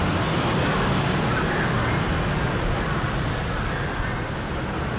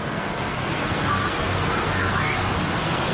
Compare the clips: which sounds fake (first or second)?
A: second